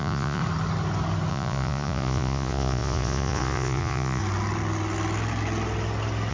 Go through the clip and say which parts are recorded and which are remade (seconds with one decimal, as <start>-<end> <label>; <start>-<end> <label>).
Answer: 0.0-0.4 remade; 0.4-1.3 recorded; 1.3-4.2 remade; 4.2-6.3 recorded